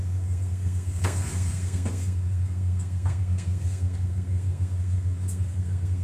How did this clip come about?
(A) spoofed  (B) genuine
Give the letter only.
A